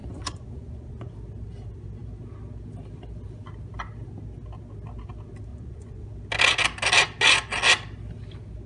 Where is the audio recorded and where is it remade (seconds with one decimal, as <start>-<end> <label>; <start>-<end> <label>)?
0.0-1.1 remade; 1.1-5.5 recorded; 5.5-6.1 remade; 6.1-8.7 recorded